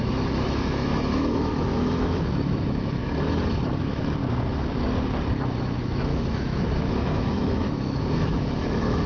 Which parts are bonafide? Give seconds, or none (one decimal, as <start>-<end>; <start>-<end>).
3.0-3.8; 4.2-5.6